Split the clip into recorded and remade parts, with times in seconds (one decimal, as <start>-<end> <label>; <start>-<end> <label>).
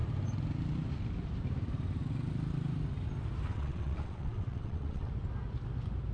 0.0-3.5 recorded; 3.5-5.1 remade; 5.1-6.1 recorded